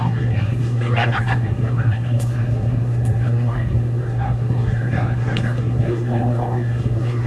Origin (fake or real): fake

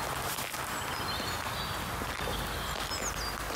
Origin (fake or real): real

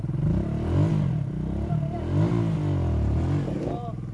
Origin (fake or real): real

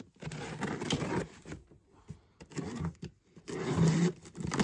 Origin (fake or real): real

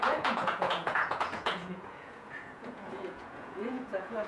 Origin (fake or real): fake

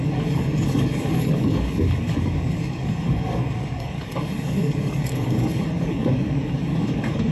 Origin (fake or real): fake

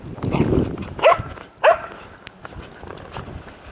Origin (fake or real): real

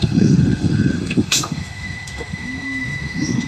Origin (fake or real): fake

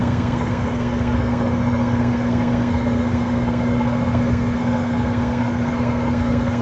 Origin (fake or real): fake